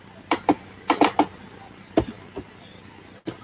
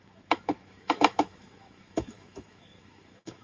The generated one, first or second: second